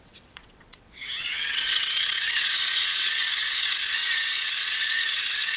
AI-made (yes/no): yes